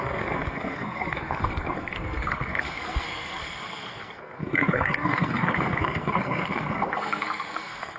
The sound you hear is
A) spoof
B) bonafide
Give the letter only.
A